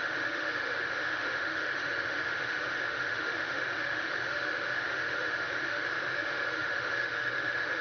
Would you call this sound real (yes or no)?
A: no